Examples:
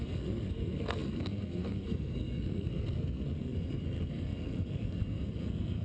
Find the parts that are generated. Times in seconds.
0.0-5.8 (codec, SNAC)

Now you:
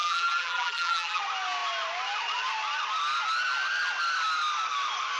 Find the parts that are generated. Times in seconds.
0.0-1.2 (vocoder, BigVGAN v2)

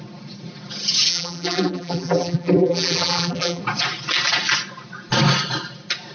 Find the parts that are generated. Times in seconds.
1.1-3.6 (vocoder, BigVGAN v2)

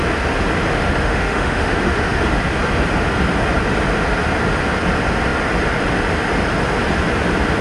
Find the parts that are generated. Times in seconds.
0.7-2.2 (autoencoder, DAC-VAE)

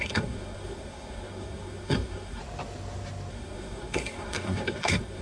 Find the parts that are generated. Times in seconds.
0.0-2.4 (codec, SNAC); 3.3-5.2

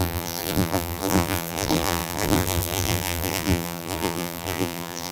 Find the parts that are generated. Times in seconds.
0.0-5.1 (vocoder, BigVGAN v2)

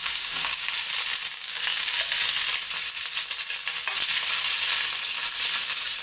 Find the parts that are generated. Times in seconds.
0.0-0.7 (codec, DAC); 1.4-1.9

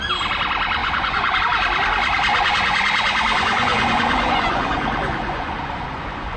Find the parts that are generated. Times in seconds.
0.8-1.4 (vocoder, Vocos); 2.3-6.4